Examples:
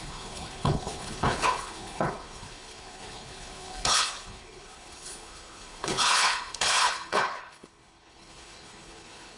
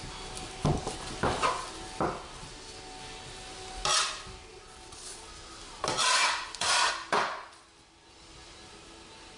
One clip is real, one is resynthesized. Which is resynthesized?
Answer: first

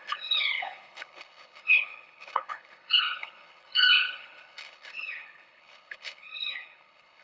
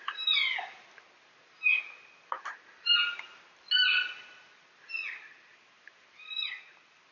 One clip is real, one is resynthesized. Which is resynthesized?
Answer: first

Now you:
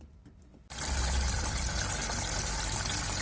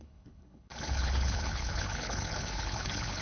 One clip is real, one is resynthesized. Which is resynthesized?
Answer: second